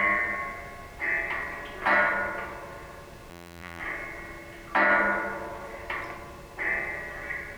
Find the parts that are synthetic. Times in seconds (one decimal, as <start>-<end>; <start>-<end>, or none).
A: 3.3-3.8